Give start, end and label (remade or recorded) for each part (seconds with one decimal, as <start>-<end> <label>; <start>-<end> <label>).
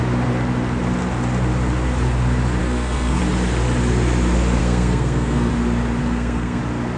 0.0-2.6 recorded; 2.6-3.2 remade; 3.2-4.6 recorded; 4.6-5.5 remade; 5.5-6.0 recorded; 6.0-6.6 remade; 6.6-7.0 recorded